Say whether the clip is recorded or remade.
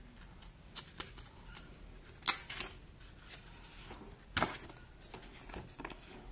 recorded